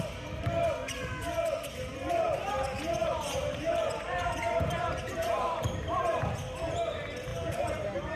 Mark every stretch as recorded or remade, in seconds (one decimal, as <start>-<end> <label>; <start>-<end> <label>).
0.0-3.0 recorded; 3.0-6.2 remade; 6.2-7.3 recorded; 7.3-8.2 remade